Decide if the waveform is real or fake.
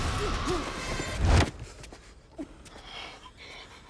real